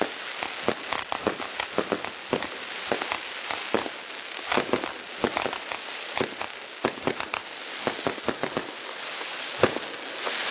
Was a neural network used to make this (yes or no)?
no